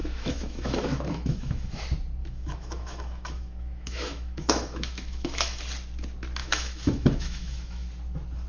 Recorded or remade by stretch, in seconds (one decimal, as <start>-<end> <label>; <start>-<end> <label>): 0.0-1.8 remade; 1.8-2.2 recorded; 2.2-5.6 remade; 5.6-6.4 recorded; 6.4-7.9 remade; 7.9-8.5 recorded